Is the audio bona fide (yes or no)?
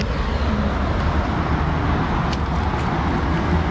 yes